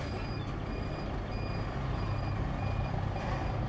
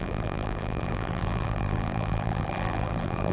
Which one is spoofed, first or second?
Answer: second